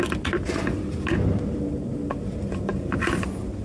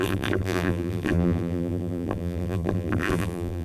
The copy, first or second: second